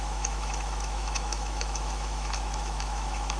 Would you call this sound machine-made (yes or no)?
yes